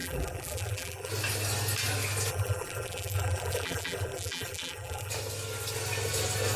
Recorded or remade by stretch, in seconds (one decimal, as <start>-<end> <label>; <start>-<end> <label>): 0.0-1.1 remade; 1.1-2.3 recorded; 2.3-5.1 remade; 5.1-6.6 recorded